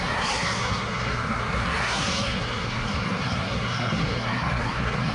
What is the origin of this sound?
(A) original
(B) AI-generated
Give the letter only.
B